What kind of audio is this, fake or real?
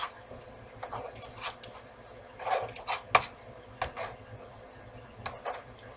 real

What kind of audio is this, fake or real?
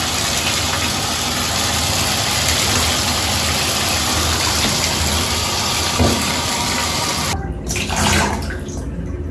real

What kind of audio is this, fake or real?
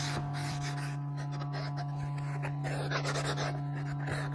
real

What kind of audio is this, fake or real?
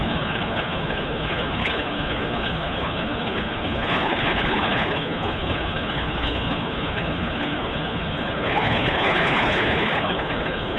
fake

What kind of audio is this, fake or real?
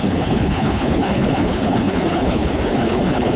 fake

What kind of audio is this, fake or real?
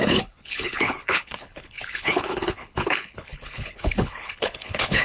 fake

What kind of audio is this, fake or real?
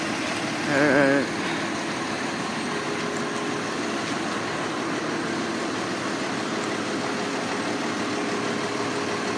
real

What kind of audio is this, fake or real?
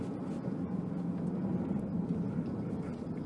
real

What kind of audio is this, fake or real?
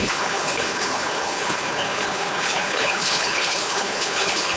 fake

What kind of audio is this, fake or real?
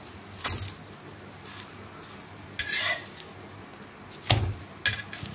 real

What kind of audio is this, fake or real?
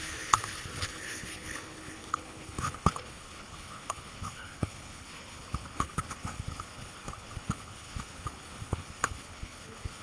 fake